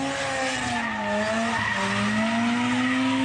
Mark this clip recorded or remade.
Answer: recorded